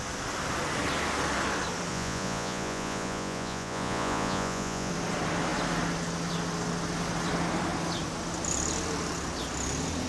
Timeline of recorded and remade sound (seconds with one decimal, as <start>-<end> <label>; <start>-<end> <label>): 0.0-1.9 recorded; 1.9-4.9 remade; 4.9-10.1 recorded

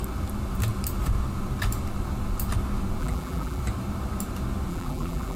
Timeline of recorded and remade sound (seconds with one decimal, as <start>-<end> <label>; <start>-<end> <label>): 0.0-3.0 recorded; 3.0-3.6 remade; 3.6-4.7 recorded; 4.7-5.4 remade

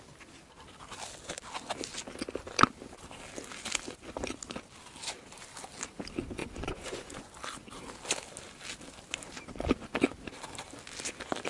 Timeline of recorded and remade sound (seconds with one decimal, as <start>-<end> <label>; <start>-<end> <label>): 0.0-6.4 recorded; 6.4-7.3 remade; 7.3-11.5 recorded

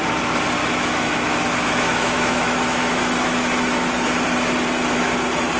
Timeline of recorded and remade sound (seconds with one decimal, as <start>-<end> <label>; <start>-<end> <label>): 0.0-0.6 recorded; 0.6-4.0 remade; 4.0-5.6 recorded